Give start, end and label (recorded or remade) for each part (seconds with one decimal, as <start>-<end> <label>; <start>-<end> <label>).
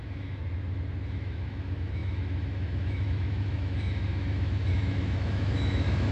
0.0-0.4 remade; 0.4-1.1 recorded; 1.1-6.1 remade